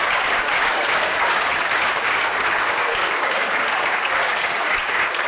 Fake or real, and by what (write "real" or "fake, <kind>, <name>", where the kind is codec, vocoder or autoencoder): fake, codec, DAC